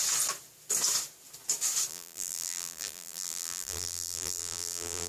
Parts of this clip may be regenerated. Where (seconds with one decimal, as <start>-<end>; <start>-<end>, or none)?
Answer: 1.9-5.1